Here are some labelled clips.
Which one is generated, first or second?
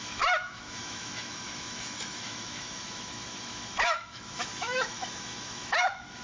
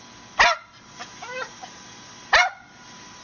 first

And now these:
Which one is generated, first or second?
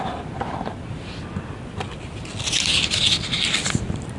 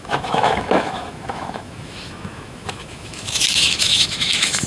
second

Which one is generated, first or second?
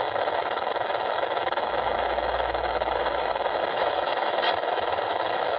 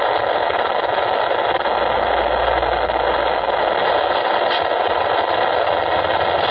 first